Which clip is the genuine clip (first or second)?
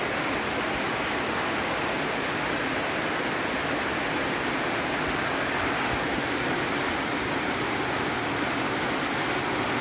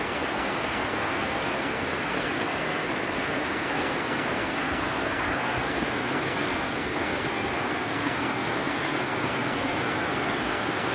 first